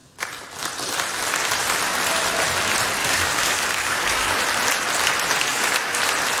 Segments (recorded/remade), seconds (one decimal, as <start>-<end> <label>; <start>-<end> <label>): 0.0-3.0 recorded; 3.0-4.4 remade; 4.4-5.5 recorded; 5.5-6.0 remade; 6.0-6.4 recorded